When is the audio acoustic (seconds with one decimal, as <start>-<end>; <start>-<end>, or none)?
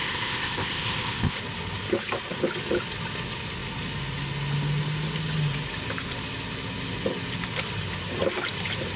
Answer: 1.4-9.0